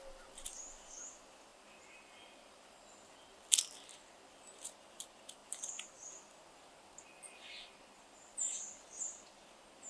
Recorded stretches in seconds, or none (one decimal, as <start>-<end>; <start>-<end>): 0.0-9.9

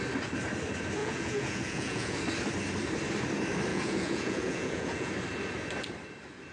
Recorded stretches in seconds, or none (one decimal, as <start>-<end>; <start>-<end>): 0.0-1.0; 2.2-3.7; 5.1-6.5

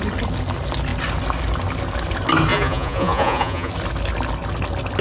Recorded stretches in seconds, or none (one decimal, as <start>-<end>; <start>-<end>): 0.0-2.5; 3.7-5.0

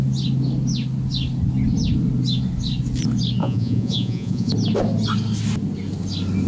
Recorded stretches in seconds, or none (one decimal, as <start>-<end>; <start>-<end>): 0.0-3.4; 4.5-6.5

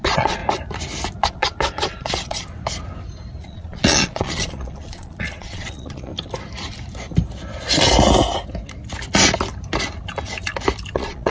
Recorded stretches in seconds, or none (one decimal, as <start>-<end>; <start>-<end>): 0.4-1.2; 2.4-3.4; 6.1-10.9